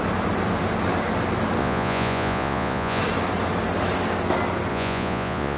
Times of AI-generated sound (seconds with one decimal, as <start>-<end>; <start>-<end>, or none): 1.6-3.0; 4.7-5.6